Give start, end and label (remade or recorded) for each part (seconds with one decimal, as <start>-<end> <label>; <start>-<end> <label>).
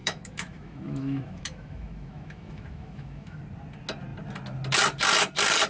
0.0-3.4 remade; 3.4-5.7 recorded